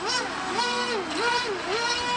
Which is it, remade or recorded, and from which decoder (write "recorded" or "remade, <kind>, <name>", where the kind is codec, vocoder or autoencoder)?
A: recorded